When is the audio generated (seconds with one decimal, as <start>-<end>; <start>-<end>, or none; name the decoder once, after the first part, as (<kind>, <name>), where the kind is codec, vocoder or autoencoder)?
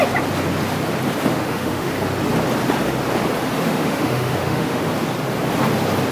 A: 1.3-1.9 (autoencoder, DAC-VAE); 3.6-4.8